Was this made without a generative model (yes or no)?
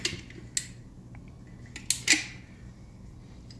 yes